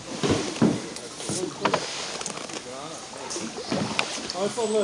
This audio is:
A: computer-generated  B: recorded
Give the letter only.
B